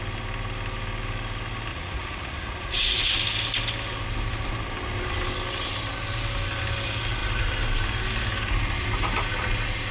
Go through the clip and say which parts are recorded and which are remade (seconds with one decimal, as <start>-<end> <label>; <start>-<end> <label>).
0.0-1.7 recorded; 1.7-3.1 remade; 3.1-9.9 recorded